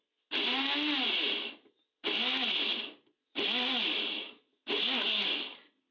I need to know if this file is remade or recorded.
recorded